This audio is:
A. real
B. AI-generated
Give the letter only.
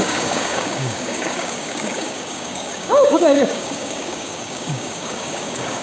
B